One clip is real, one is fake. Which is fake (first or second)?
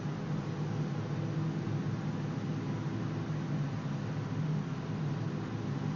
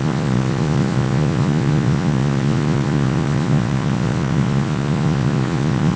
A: second